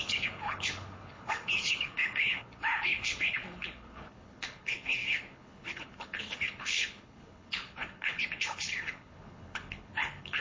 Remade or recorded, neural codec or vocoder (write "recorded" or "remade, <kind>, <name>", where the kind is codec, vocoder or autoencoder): remade, codec, HILCodec